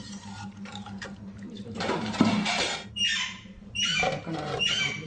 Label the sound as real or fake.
fake